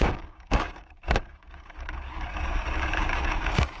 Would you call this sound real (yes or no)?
no